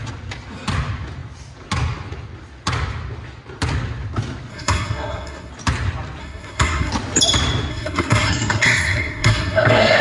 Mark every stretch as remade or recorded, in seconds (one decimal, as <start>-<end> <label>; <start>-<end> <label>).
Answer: 0.0-4.5 recorded; 4.5-5.5 remade; 5.5-6.2 recorded; 6.2-6.9 remade; 6.9-7.7 recorded; 7.7-10.0 remade